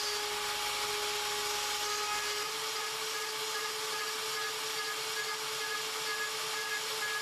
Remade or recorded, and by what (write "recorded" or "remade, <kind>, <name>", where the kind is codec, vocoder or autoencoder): recorded